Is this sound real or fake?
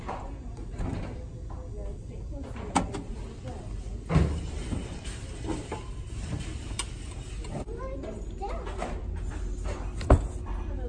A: real